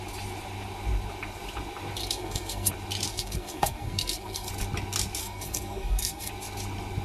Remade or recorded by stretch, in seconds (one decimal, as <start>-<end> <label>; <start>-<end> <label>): 0.0-2.0 recorded; 2.0-2.7 remade; 2.7-3.1 recorded; 3.1-4.5 remade; 4.5-5.2 recorded; 5.2-6.3 remade; 6.3-7.0 recorded